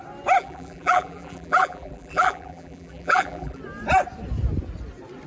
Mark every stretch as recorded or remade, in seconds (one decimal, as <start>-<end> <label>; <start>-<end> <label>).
0.0-0.4 recorded; 0.4-3.6 remade; 3.6-5.3 recorded